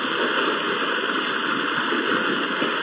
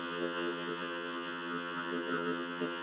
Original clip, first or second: first